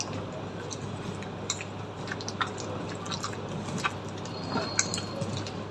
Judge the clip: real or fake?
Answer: real